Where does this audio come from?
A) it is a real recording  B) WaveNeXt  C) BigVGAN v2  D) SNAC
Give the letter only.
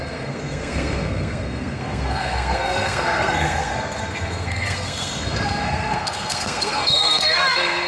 D